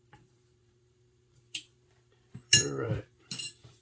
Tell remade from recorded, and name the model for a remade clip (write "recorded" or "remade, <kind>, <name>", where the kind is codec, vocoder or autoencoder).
remade, vocoder, BigVGAN v2